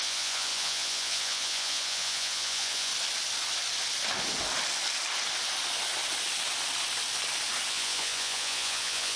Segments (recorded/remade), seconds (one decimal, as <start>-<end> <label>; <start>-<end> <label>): 0.0-2.9 remade; 2.9-7.7 recorded; 7.7-9.2 remade